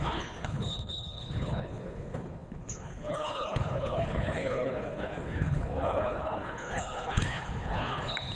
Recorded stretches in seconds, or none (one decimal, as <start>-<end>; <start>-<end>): none

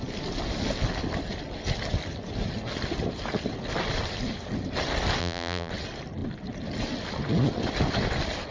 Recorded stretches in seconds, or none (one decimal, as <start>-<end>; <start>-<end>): 0.0-5.2; 5.7-8.5

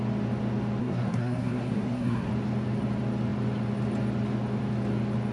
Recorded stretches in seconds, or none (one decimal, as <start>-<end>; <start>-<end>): 0.0-0.8; 2.3-5.3

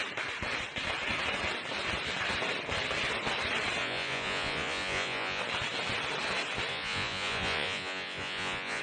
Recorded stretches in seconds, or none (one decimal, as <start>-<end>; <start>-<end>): 0.0-3.8; 5.4-6.7